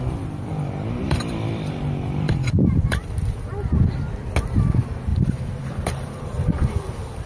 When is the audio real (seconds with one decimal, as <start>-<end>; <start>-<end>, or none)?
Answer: 0.0-0.5; 3.5-5.1